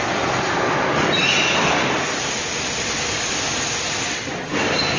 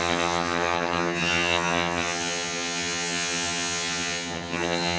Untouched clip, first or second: first